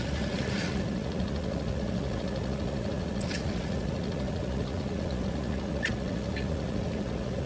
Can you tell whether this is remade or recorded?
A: remade